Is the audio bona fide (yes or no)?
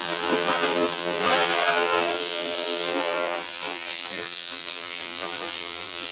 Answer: no